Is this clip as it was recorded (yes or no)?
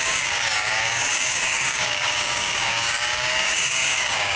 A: no